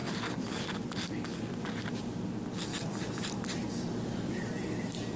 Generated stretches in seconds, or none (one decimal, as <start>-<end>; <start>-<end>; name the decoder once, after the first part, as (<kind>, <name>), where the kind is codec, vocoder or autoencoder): 0.0-0.8 (vocoder, BigVGAN v2)